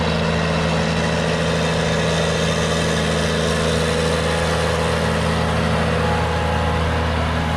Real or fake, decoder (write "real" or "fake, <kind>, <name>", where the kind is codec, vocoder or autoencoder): real